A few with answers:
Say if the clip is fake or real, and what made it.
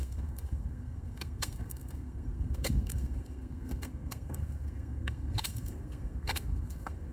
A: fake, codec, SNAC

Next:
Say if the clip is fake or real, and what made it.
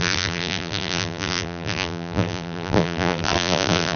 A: fake, vocoder, BigVGAN v2